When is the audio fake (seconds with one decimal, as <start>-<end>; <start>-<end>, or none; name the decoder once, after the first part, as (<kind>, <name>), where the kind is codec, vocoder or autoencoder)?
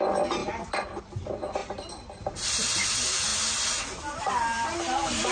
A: 0.4-1.0 (vocoder, BigVGAN v2); 1.6-2.5